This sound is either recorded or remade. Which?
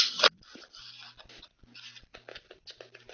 recorded